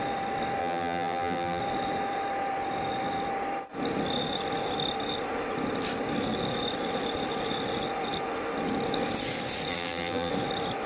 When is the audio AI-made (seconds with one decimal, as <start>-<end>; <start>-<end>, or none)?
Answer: 0.6-1.6; 9.7-10.3